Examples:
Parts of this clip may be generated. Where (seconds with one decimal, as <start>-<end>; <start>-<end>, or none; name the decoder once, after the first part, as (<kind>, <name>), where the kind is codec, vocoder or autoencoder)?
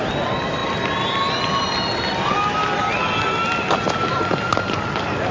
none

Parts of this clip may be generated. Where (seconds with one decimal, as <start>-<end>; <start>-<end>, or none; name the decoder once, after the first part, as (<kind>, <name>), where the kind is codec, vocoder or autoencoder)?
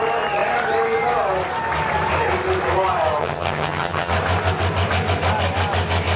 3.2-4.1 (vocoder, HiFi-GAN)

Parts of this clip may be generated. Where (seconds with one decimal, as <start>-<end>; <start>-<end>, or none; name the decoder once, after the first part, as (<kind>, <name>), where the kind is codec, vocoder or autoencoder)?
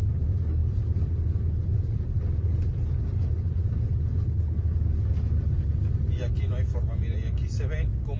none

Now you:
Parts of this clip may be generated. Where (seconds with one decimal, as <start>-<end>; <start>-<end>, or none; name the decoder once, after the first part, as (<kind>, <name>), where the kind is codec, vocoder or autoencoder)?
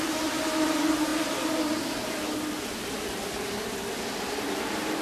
0.0-5.0 (vocoder, BigVGAN v2)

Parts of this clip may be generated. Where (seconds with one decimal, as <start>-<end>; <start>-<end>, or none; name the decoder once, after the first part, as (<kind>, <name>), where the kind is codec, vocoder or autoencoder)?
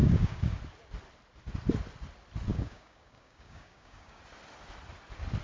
0.0-0.6 (codec, DAC); 2.5-4.2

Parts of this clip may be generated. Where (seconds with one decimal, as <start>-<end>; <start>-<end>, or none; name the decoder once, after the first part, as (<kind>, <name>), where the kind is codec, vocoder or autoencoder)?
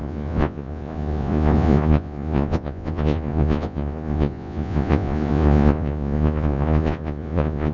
0.0-7.7 (vocoder, Vocos)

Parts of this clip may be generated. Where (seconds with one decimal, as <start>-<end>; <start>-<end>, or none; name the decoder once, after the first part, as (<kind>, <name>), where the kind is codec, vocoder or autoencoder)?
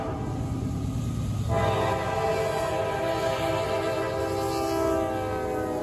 none